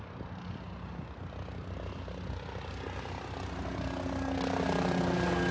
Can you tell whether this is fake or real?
real